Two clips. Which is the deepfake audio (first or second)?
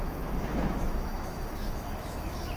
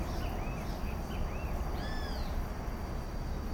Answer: first